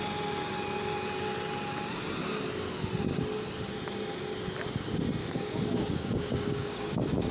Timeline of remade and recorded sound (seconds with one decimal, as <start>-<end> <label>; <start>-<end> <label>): 0.0-5.2 recorded; 5.2-7.3 remade